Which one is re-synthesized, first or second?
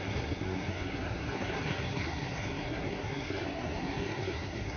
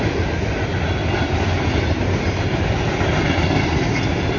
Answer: first